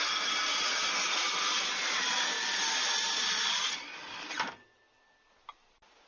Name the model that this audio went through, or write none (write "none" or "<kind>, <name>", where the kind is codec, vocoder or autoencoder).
none